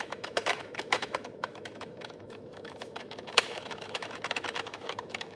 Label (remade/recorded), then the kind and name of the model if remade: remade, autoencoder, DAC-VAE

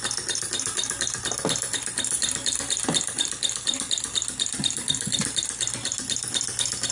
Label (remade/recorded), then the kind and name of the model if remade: recorded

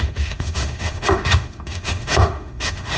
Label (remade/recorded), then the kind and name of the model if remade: remade, autoencoder, DAC-VAE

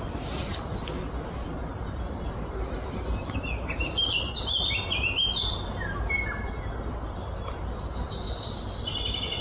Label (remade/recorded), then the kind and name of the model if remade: recorded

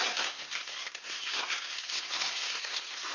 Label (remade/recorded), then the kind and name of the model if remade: remade, codec, SNAC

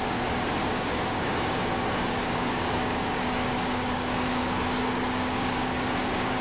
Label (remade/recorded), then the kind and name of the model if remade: remade, codec, DAC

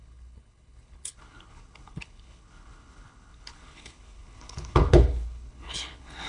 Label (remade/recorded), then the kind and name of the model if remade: remade, codec, HILCodec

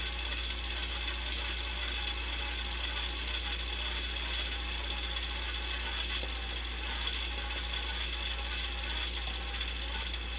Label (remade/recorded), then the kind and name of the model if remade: recorded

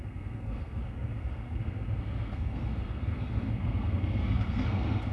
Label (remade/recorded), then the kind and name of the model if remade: remade, codec, SNAC